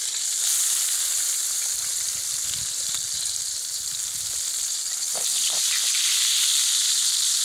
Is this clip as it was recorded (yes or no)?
no